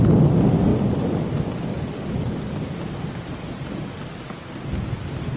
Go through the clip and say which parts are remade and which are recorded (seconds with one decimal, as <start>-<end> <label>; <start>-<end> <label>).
0.0-5.4 recorded